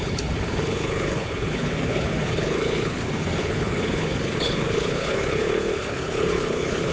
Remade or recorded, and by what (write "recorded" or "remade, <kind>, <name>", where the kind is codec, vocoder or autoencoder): remade, codec, HILCodec